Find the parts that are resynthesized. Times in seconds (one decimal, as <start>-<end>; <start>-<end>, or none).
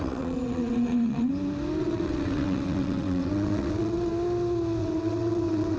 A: 0.0-1.3; 1.8-4.1; 4.8-5.8